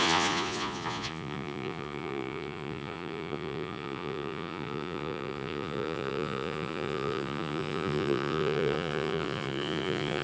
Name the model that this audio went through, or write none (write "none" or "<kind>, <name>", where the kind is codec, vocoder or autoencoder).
vocoder, Vocos